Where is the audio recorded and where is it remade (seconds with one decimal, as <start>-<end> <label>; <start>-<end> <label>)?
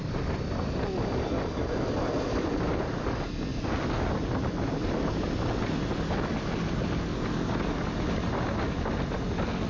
0.0-9.7 recorded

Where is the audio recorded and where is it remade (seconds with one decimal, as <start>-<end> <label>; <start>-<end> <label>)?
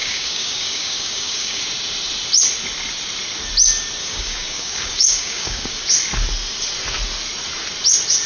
0.0-1.6 remade; 1.6-4.0 recorded; 4.0-5.8 remade; 5.8-8.3 recorded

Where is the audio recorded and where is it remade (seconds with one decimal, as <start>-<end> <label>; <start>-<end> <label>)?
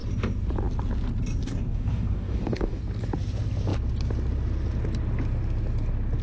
0.0-1.4 recorded; 1.4-2.8 remade; 2.8-6.2 recorded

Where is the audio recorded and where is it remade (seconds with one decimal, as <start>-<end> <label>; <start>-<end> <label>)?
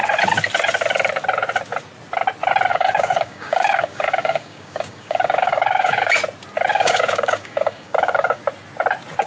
0.0-2.7 recorded; 2.7-6.1 remade; 6.1-6.7 recorded; 6.7-8.4 remade; 8.4-9.3 recorded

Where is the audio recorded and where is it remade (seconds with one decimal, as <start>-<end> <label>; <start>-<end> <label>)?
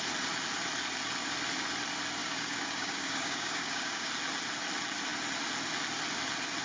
0.0-2.2 recorded; 2.2-4.1 remade; 4.1-6.6 recorded